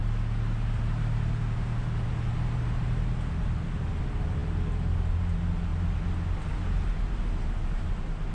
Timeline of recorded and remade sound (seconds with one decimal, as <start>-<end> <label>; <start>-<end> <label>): 0.0-8.3 recorded